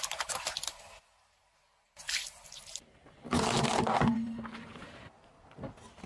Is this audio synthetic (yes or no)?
no